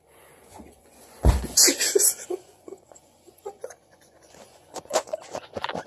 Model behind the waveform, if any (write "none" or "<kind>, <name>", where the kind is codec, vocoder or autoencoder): vocoder, Vocos